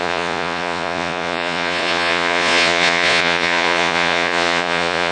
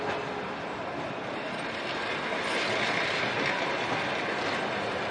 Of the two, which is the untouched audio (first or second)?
second